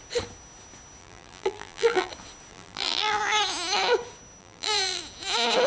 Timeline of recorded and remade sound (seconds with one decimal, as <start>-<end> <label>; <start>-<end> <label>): 0.0-1.0 recorded; 1.0-2.1 remade; 2.1-2.5 recorded; 2.5-3.2 remade; 3.2-4.4 recorded; 4.4-5.0 remade; 5.0-5.7 recorded

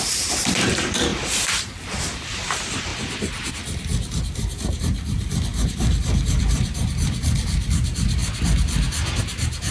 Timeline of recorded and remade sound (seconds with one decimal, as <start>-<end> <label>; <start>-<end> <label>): 0.0-2.9 remade; 2.9-3.5 recorded; 3.5-8.2 remade; 8.2-9.2 recorded; 9.2-9.7 remade

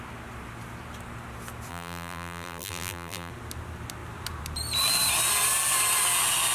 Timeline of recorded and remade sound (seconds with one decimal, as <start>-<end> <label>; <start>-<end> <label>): 0.0-1.7 recorded; 1.7-3.3 remade; 3.3-6.5 recorded

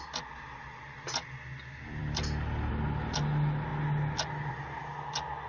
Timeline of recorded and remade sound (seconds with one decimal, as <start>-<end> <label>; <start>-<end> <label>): 0.0-5.5 recorded